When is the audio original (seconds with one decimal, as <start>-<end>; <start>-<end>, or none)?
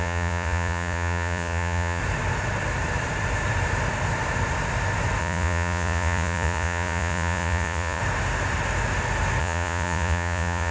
2.0-5.2; 8.0-9.4